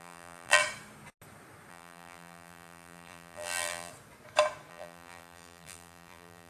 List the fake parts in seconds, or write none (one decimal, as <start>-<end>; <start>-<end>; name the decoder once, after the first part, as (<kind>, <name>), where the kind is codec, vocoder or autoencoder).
0.0-0.6 (vocoder, BigVGAN v2); 1.7-3.9; 4.7-6.5